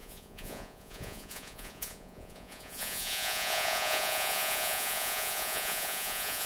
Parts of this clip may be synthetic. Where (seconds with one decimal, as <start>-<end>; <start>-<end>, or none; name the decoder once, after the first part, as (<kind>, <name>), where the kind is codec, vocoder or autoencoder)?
0.0-6.5 (vocoder, Vocos)